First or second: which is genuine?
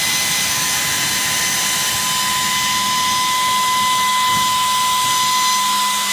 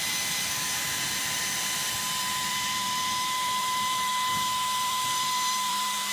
first